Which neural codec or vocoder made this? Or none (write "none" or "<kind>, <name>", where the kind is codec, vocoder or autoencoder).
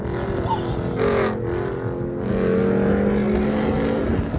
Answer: none